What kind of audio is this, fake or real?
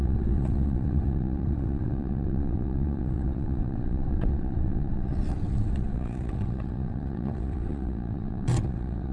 fake